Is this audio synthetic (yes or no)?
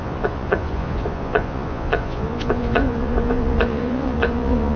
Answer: yes